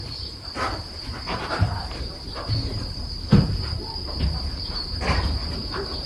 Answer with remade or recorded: remade